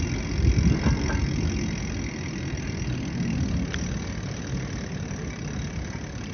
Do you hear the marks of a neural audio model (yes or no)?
no